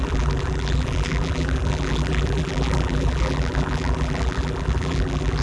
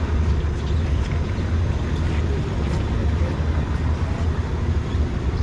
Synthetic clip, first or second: first